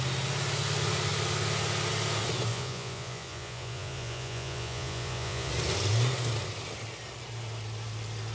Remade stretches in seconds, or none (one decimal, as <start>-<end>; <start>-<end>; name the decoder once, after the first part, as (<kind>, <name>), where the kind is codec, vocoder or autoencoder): 2.5-5.5 (vocoder, Vocos)